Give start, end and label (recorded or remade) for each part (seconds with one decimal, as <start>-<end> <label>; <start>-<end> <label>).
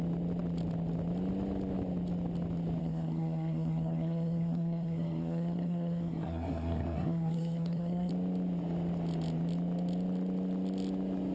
0.0-2.8 recorded; 2.8-8.1 remade; 8.1-11.3 recorded